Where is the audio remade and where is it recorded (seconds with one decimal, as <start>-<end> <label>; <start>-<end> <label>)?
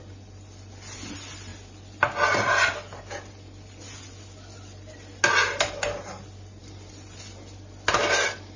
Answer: 0.0-8.6 recorded